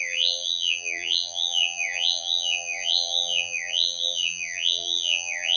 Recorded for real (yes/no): no